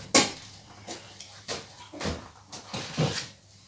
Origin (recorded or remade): recorded